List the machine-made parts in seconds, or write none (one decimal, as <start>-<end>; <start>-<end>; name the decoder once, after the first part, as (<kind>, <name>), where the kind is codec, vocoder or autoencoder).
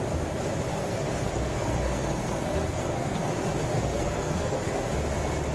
0.7-3.3 (codec, SNAC); 3.7-4.9